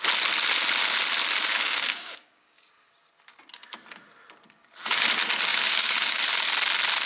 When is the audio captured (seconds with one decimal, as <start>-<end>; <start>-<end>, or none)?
0.0-1.5; 2.7-5.5; 6.2-7.1